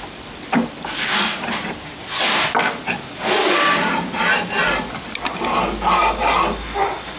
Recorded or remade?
recorded